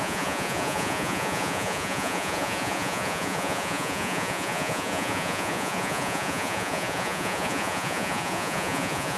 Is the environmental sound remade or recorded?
remade